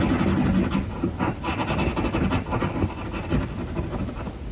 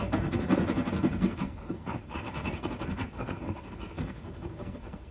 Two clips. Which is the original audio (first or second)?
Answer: first